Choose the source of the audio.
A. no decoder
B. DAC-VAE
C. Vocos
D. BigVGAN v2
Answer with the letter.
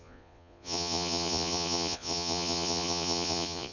C